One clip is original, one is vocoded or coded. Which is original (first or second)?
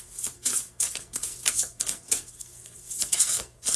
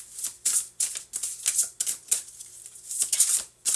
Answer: second